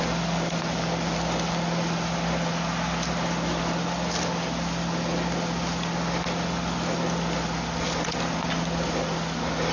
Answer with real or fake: real